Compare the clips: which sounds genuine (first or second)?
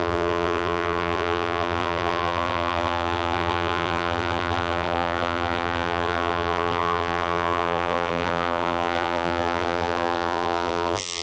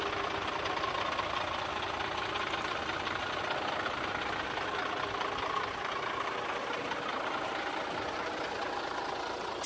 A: second